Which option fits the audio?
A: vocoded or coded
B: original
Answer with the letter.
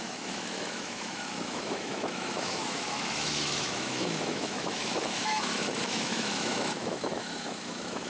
A